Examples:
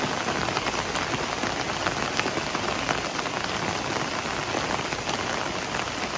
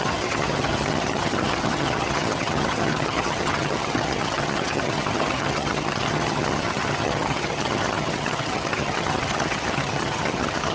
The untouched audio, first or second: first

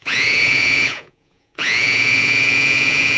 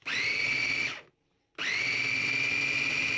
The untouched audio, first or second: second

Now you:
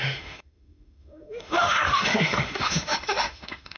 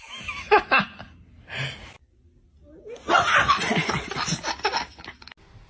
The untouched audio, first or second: second